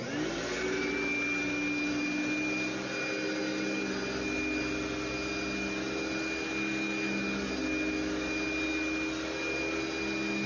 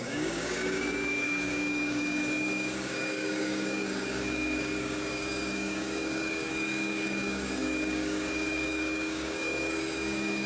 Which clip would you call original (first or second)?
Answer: first